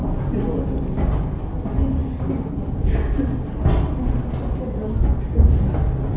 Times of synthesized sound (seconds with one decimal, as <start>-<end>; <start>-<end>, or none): none